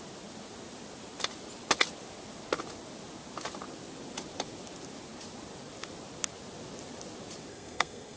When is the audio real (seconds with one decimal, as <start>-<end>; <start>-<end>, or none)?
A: 0.0-7.5